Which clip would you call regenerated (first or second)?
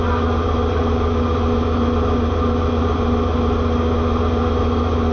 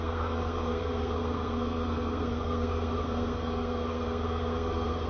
second